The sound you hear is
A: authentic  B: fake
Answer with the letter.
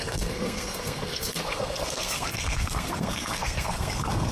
B